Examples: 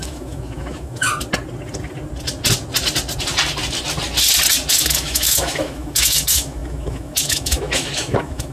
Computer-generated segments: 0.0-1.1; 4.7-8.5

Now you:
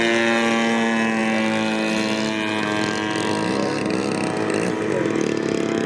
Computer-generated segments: none

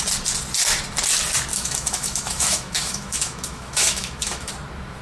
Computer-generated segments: 1.5-4.5

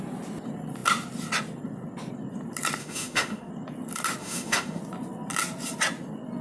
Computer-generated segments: 2.8-3.5; 4.2-4.8